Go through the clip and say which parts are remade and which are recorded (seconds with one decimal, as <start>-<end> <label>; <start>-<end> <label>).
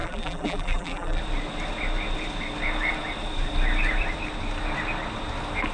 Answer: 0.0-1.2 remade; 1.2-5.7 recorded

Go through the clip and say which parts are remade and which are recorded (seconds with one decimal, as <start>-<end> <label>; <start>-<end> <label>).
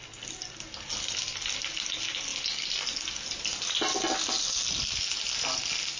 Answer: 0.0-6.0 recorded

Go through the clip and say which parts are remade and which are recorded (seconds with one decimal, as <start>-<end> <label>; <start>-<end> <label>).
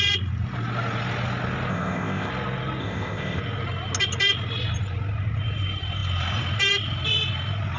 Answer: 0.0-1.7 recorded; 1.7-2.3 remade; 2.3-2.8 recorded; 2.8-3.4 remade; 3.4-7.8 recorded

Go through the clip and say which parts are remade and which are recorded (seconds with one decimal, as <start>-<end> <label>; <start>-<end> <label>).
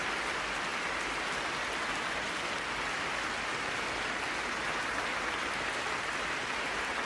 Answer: 0.0-7.1 recorded